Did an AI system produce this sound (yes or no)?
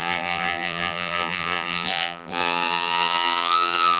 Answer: yes